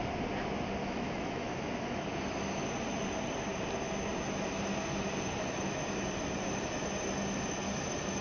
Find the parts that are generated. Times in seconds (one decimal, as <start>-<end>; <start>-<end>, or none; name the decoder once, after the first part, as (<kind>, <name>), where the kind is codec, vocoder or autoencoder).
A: 0.8-2.1 (autoencoder, DAC-VAE)